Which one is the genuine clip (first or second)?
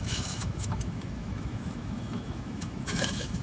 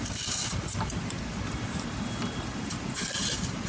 second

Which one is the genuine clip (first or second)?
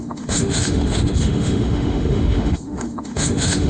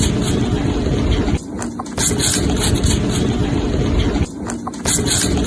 second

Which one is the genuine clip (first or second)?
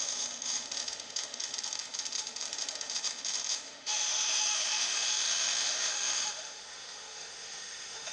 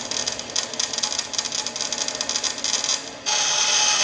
second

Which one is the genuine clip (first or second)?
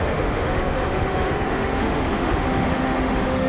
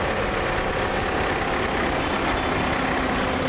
second